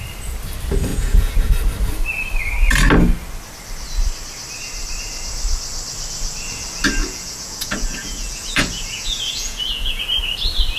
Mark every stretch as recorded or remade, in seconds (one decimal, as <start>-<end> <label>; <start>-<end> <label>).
0.0-0.9 recorded; 0.9-1.5 remade; 1.5-7.0 recorded; 7.0-10.0 remade; 10.0-10.8 recorded